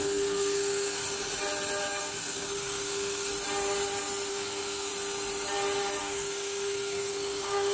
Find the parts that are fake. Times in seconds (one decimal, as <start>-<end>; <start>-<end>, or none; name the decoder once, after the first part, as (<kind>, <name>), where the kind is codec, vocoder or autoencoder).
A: 0.0-1.0 (codec, SNAC); 2.0-3.3; 4.3-4.9; 6.0-7.7